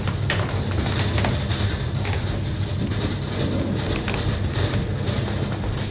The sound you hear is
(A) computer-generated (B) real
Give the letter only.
B